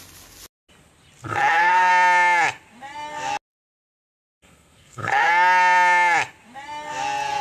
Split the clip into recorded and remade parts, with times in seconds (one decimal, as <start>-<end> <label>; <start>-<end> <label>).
0.0-1.3 recorded; 1.3-1.9 remade; 1.9-3.5 recorded; 3.5-5.3 remade; 5.3-7.4 recorded